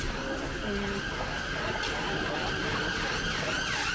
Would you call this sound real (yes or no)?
yes